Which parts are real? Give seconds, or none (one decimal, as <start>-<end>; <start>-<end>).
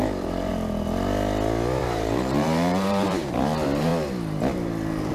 0.5-1.8; 3.9-5.1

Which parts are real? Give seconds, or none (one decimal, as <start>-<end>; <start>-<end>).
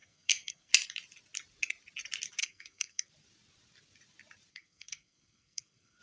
0.7-2.4; 3.1-4.5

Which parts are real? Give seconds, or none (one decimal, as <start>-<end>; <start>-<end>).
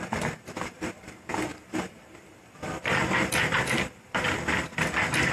0.0-1.5; 4.7-5.3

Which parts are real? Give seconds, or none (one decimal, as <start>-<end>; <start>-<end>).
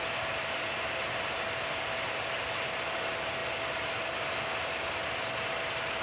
0.0-6.0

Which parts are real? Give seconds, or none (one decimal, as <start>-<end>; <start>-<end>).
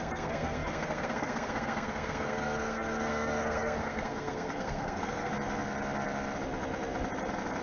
5.3-7.6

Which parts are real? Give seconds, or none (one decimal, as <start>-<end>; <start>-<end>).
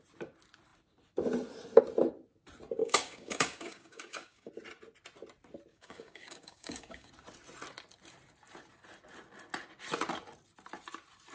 0.0-2.8; 4.5-5.7; 7.1-11.3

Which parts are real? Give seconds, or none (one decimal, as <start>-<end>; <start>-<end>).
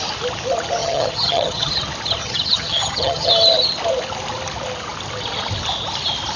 0.0-0.8; 1.7-2.2; 3.3-6.4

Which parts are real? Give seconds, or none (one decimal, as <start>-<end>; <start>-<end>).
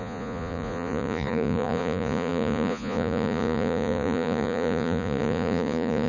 none